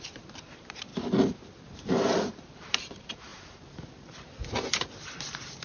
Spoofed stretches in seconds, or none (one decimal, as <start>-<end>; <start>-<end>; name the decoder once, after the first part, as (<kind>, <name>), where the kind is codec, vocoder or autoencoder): 0.0-0.9 (vocoder, BigVGAN v2); 1.6-5.6